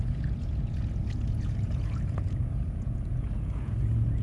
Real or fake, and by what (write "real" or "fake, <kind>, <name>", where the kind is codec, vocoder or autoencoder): fake, vocoder, Vocos